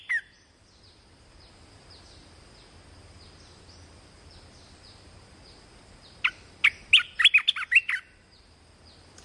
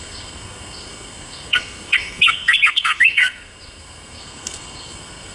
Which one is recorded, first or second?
first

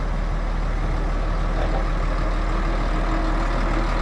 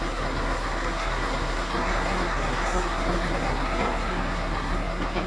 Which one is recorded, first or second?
first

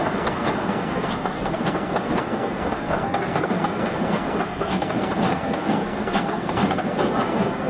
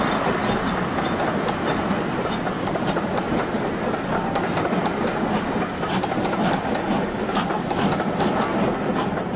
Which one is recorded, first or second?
second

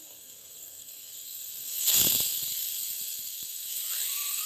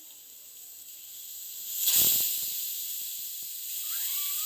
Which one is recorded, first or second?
second